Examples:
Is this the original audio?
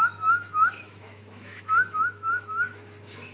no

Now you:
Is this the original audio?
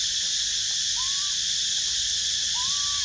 yes